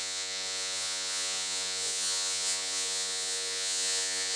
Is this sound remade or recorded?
remade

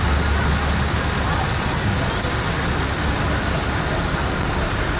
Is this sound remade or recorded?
recorded